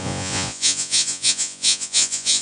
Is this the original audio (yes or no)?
no